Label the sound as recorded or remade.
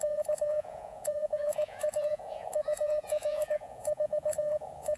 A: remade